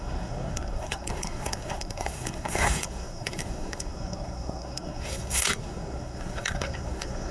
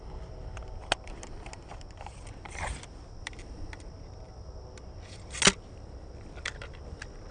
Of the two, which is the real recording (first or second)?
second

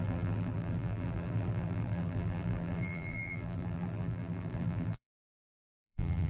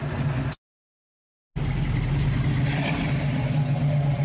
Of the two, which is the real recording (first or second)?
second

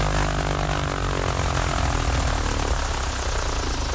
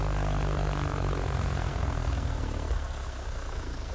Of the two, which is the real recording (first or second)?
first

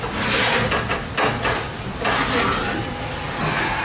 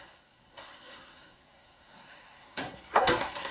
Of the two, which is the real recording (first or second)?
first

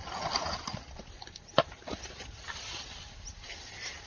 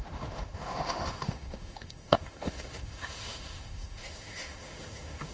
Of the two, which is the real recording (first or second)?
first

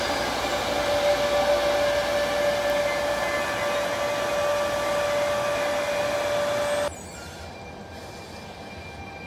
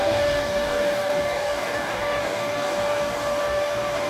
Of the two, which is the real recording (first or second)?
first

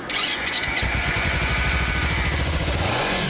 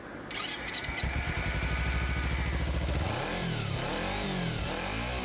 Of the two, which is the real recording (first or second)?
second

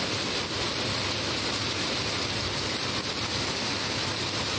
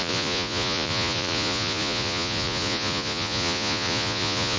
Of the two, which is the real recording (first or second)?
first